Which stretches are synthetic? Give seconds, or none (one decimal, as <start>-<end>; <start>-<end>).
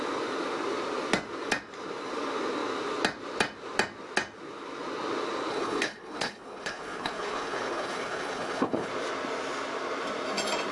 5.5-8.9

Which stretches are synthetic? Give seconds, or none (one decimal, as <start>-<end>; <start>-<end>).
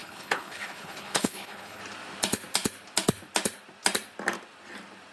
0.0-1.8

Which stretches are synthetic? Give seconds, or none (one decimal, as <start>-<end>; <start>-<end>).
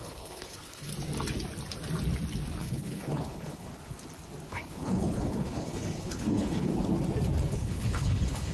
0.0-0.9; 2.6-3.7; 4.5-6.7; 7.5-8.5